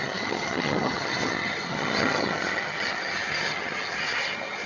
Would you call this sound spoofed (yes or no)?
yes